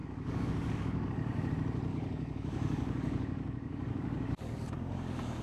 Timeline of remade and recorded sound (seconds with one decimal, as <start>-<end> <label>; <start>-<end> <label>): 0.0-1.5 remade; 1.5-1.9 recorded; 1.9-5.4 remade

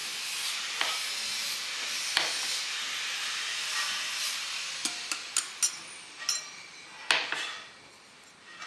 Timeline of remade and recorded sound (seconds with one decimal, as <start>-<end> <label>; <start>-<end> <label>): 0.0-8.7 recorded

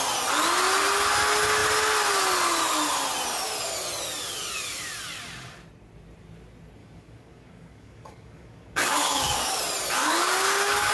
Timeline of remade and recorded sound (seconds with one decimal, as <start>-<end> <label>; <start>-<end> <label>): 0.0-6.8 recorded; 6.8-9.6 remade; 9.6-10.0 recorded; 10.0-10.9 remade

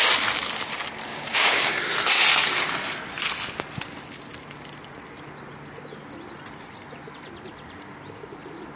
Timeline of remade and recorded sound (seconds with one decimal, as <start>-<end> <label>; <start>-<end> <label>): 0.0-1.1 recorded; 1.1-1.8 remade; 1.8-8.8 recorded